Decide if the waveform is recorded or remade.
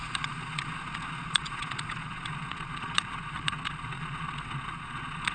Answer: remade